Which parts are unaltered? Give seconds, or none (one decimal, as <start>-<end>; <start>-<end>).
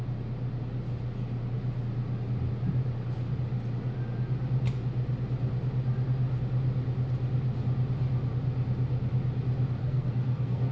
0.0-9.8